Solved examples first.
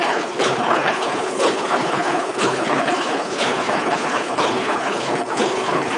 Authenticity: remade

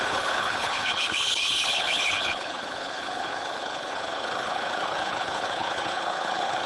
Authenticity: remade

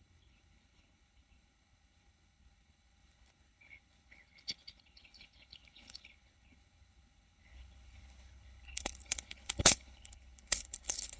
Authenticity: remade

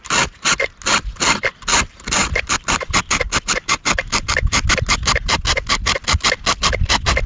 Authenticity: recorded